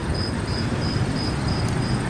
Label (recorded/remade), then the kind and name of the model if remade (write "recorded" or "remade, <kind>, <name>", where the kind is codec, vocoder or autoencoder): recorded